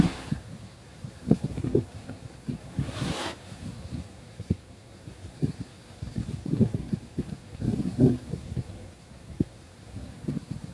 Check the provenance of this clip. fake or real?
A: fake